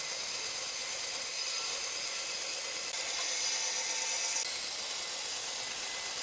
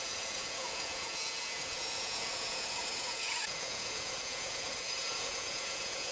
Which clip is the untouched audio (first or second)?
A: first